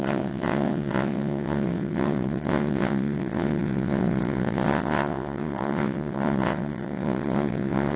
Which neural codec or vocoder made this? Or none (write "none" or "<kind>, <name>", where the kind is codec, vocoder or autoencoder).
vocoder, WaveNeXt